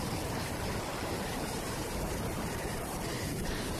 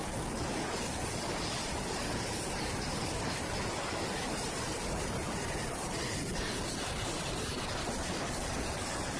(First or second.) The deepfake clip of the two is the first